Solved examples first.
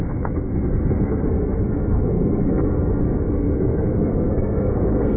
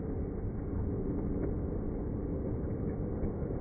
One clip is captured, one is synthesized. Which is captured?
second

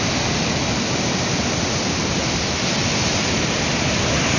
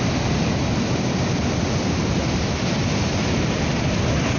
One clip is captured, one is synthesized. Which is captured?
first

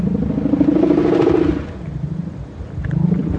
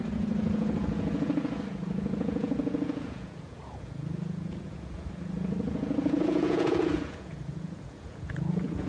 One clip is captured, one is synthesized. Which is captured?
first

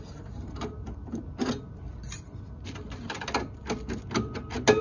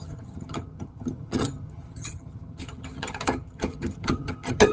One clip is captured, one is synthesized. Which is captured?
first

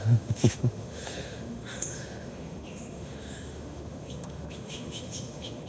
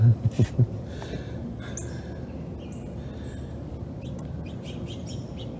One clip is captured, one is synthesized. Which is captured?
second